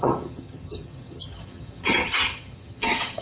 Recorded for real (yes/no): no